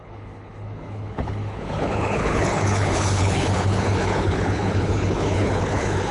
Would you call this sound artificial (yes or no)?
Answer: yes